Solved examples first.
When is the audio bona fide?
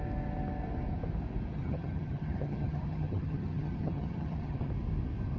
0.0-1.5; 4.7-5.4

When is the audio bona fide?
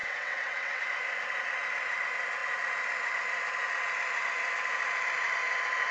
0.8-5.9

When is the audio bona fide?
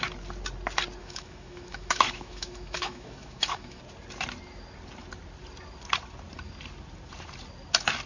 0.0-1.0; 3.8-8.1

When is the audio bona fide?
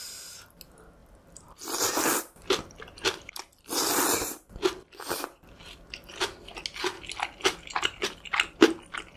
0.0-1.0; 6.2-9.2